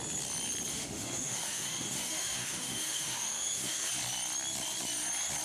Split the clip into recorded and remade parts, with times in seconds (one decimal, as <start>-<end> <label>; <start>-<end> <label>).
0.0-0.7 recorded; 0.7-3.9 remade; 3.9-5.4 recorded